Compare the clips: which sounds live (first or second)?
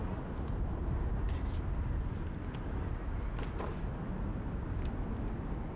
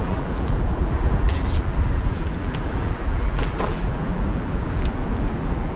first